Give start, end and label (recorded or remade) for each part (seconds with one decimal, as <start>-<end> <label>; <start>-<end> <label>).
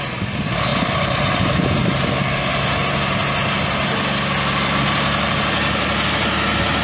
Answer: 0.0-6.8 recorded